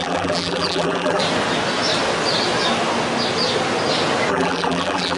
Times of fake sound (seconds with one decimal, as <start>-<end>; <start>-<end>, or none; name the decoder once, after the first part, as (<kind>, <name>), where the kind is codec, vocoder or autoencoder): 0.0-1.2 (vocoder, BigVGAN v2); 4.3-5.2